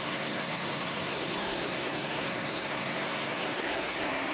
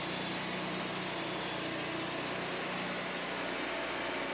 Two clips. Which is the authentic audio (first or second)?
second